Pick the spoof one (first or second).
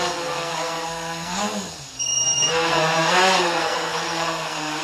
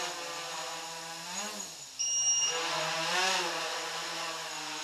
first